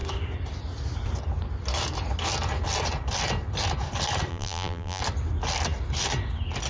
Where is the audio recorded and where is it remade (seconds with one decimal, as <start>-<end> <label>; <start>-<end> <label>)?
0.0-4.3 recorded; 4.3-5.0 remade; 5.0-6.7 recorded

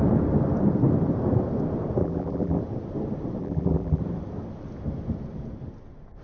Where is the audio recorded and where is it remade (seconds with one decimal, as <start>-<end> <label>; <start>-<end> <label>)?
0.0-2.0 recorded; 2.0-2.6 remade; 2.6-3.4 recorded; 3.4-4.0 remade; 4.0-6.2 recorded

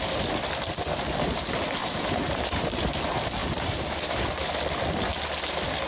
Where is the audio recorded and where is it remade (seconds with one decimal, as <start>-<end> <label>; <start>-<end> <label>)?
0.0-1.8 recorded; 1.8-2.9 remade; 2.9-3.4 recorded; 3.4-4.2 remade; 4.2-5.9 recorded

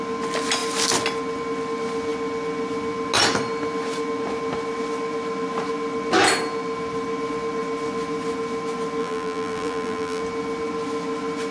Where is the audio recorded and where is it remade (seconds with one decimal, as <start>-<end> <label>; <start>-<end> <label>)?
0.0-9.0 recorded; 9.0-10.2 remade; 10.2-11.5 recorded